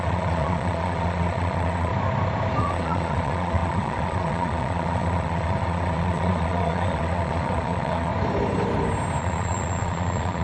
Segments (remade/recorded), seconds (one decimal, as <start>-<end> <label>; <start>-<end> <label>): 0.0-1.9 remade; 1.9-2.6 recorded; 2.6-8.1 remade; 8.1-9.2 recorded; 9.2-10.4 remade